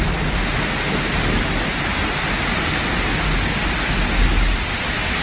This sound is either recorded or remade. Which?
recorded